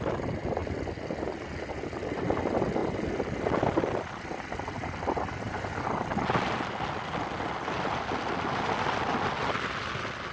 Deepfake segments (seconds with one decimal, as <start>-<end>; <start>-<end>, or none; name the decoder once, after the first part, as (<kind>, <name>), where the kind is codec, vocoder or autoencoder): none